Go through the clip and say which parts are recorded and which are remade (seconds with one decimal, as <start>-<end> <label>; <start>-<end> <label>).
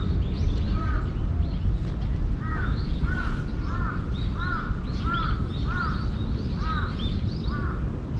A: 0.0-2.5 recorded; 2.5-3.0 remade; 3.0-8.2 recorded